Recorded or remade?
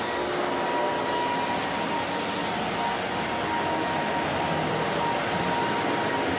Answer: recorded